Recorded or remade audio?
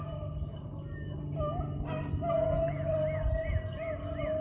recorded